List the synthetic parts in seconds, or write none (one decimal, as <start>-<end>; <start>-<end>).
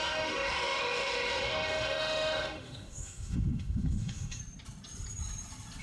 0.0-4.4